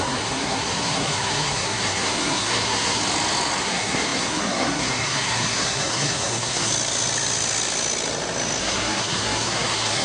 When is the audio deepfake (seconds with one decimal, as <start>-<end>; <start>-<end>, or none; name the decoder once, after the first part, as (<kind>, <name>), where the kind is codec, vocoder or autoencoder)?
0.0-3.0 (codec, SNAC); 3.6-6.7; 8.6-10.0